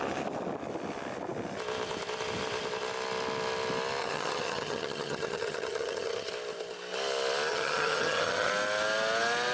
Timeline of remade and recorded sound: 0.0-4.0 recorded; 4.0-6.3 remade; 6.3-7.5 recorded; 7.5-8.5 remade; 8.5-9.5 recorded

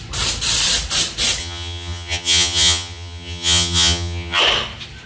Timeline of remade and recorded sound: 0.0-1.4 recorded; 1.4-4.4 remade; 4.4-5.1 recorded